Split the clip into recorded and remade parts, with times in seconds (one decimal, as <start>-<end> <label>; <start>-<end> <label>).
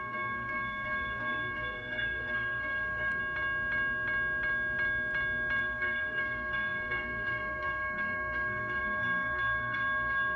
0.0-3.2 remade; 3.2-5.6 recorded; 5.6-10.4 remade